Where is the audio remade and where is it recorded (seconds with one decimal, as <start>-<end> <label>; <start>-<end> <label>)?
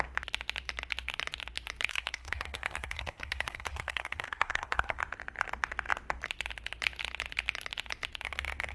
0.0-1.9 recorded; 1.9-5.0 remade; 5.0-8.7 recorded